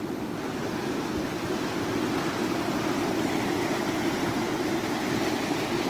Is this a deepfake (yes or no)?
no